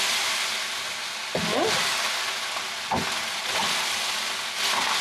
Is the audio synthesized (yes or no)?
no